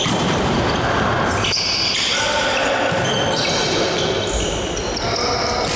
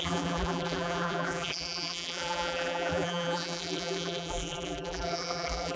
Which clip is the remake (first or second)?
second